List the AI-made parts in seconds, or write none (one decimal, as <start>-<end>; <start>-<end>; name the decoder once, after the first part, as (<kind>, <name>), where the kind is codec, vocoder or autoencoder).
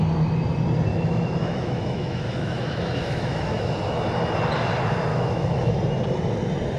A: 0.9-3.7 (autoencoder, DAC-VAE); 5.1-5.7